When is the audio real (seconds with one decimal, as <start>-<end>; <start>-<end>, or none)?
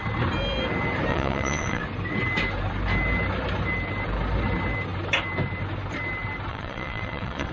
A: 0.0-1.1; 1.8-6.5